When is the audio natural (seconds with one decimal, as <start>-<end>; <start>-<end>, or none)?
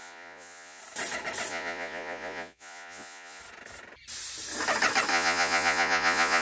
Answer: 0.8-1.5; 3.4-5.1